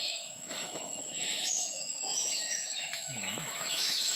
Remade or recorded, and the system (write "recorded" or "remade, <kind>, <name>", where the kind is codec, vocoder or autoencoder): remade, autoencoder, DAC-VAE